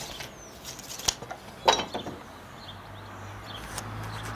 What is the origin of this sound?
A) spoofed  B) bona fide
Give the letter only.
B